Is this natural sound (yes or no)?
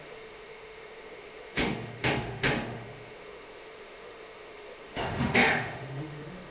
no